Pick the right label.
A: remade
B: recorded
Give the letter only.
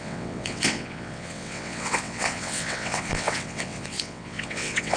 A